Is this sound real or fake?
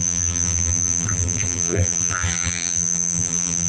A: fake